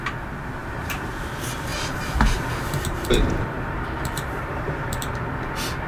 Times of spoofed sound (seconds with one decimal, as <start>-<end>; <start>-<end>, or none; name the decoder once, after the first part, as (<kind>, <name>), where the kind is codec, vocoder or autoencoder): 0.6-1.1 (vocoder, BigVGAN v2); 1.7-5.2